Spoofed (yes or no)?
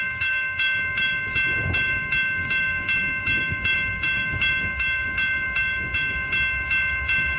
yes